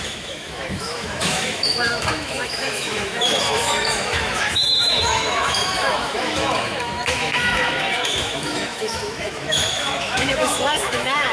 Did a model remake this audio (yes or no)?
yes